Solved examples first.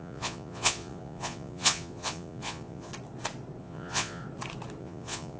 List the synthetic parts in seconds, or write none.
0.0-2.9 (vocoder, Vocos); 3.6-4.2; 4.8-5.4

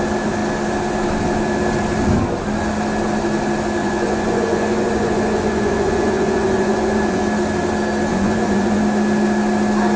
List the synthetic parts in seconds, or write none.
3.8-7.2 (vocoder, Vocos); 8.1-8.8

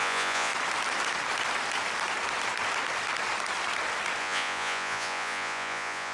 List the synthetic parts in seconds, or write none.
0.0-0.5 (vocoder, Vocos); 4.2-6.1